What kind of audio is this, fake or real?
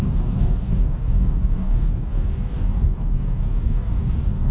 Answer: fake